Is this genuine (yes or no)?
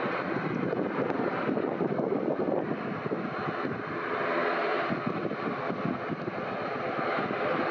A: yes